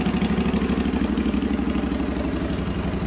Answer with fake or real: real